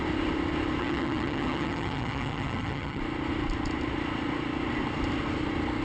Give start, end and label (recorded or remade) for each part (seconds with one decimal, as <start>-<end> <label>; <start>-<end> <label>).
0.0-0.8 recorded; 0.8-3.0 remade; 3.0-5.8 recorded